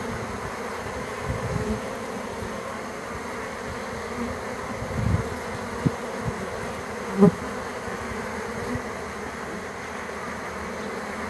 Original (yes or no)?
yes